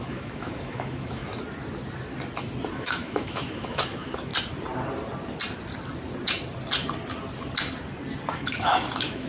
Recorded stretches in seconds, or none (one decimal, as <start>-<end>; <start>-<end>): 1.2-2.7; 4.3-8.3